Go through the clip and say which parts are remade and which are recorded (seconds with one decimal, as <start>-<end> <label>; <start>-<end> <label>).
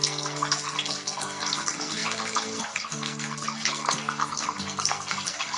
0.0-5.6 remade